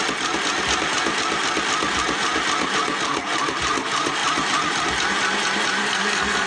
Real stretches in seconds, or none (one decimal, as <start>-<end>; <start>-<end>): 0.0-5.8